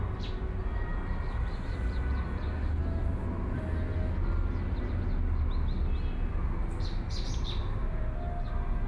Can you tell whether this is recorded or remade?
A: recorded